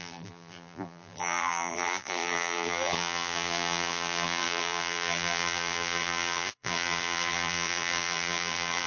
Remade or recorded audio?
remade